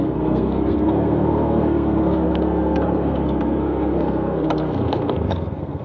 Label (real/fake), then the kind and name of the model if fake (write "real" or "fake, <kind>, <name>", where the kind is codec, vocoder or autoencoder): fake, codec, SNAC